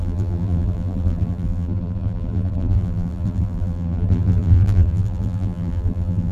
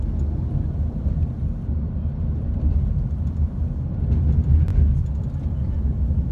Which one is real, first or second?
second